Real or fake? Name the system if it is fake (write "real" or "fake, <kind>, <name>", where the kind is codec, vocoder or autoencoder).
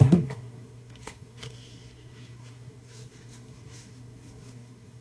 fake, codec, SNAC